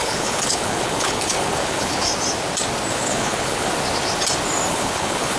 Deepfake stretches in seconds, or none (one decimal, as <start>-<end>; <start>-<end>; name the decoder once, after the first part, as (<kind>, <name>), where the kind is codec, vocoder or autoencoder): 0.0-2.1 (codec, HILCodec); 2.9-3.7; 4.7-5.4